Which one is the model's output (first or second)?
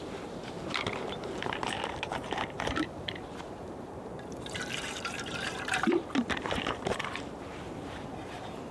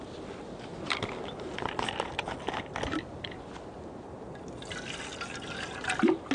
first